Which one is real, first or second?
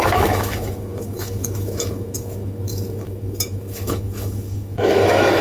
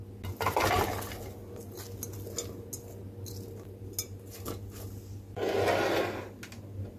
second